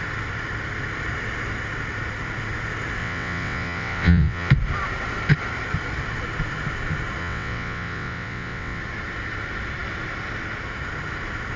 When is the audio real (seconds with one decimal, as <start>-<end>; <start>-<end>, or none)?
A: 0.0-3.0; 4.5-7.2; 8.8-11.6

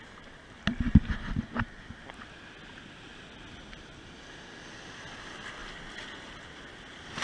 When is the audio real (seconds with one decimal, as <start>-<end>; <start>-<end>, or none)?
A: 0.0-7.2